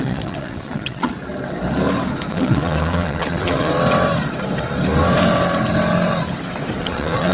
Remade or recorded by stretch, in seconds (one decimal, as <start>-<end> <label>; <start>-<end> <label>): 0.0-1.1 remade; 1.1-2.3 recorded; 2.3-3.7 remade; 3.7-6.8 recorded; 6.8-7.3 remade